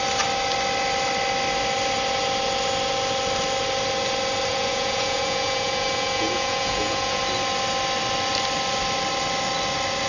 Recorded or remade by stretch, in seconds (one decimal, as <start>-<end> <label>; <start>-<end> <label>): 0.0-4.5 recorded; 4.5-7.2 remade; 7.2-10.1 recorded